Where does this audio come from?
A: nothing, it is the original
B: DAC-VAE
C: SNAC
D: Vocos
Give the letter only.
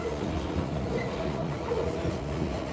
D